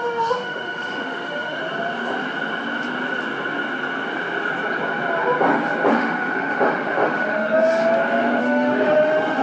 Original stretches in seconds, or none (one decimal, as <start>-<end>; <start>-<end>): 1.6-5.9; 7.8-8.4